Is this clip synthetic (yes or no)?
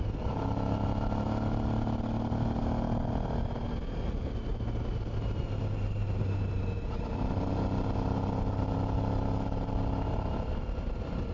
no